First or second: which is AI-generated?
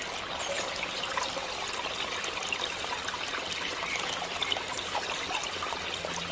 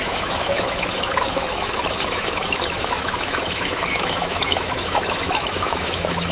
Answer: second